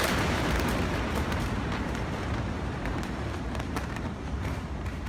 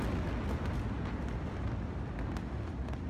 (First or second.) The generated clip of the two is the first